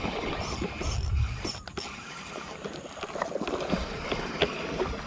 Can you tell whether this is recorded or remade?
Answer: recorded